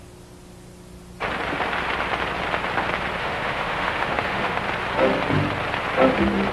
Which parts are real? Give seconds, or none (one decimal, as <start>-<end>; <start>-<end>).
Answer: 0.0-3.2; 4.6-6.5